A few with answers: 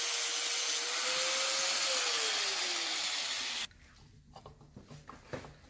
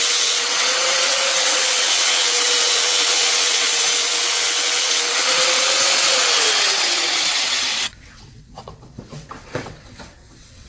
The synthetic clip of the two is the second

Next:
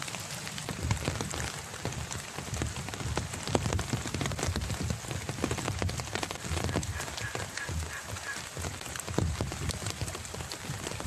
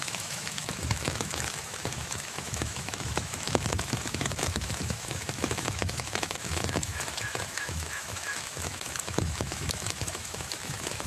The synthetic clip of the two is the second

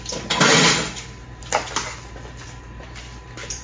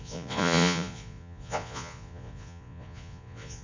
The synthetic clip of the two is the second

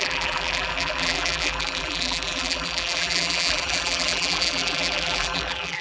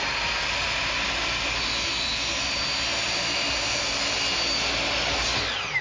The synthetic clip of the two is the first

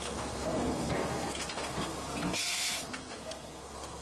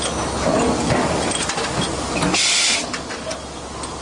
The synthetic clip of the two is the first